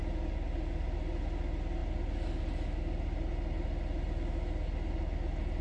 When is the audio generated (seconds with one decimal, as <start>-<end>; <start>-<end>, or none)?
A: none

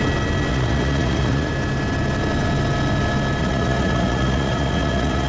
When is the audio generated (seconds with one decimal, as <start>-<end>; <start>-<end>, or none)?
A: 0.5-1.5; 3.4-5.3